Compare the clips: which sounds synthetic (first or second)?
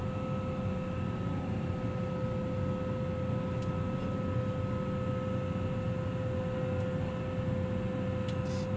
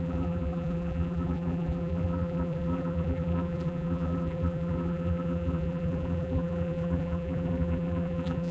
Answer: second